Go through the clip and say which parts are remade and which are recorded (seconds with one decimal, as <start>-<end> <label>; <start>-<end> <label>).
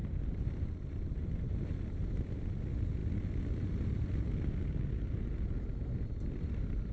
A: 0.0-1.5 remade; 1.5-6.9 recorded